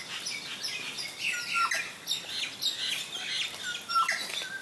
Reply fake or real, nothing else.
real